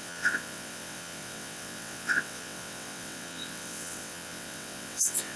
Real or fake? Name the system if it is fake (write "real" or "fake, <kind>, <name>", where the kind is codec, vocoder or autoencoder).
fake, vocoder, WaveNeXt